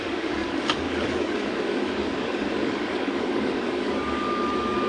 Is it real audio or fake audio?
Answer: fake